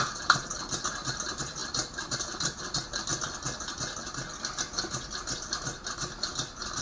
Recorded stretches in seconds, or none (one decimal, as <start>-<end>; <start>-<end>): 0.5-1.2; 3.1-6.8